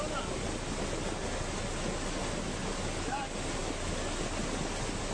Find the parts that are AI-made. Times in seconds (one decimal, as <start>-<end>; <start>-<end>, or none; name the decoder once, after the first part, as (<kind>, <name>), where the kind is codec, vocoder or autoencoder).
none